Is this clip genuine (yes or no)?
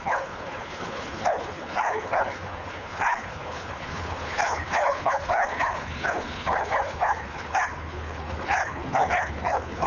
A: no